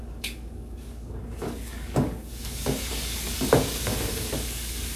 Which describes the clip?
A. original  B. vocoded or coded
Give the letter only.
B